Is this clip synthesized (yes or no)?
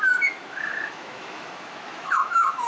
yes